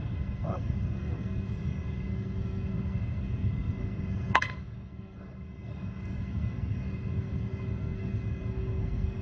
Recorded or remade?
remade